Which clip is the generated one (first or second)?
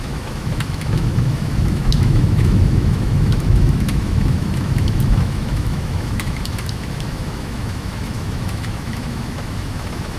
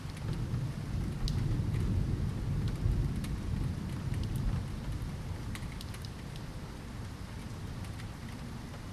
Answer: first